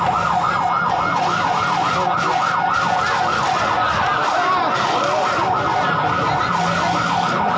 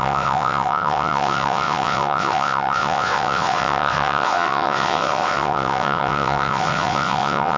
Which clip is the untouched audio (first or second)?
first